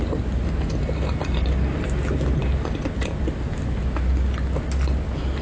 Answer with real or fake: real